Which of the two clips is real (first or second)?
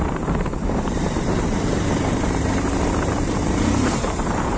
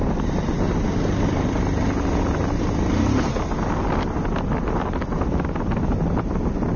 second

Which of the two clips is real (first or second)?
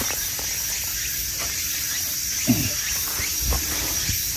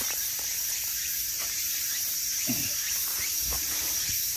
first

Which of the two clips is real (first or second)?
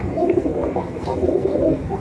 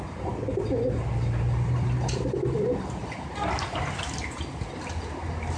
second